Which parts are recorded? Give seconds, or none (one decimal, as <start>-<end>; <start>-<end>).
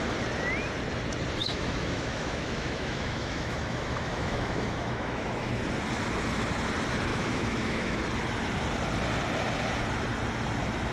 0.0-1.4; 5.5-7.1; 8.0-10.9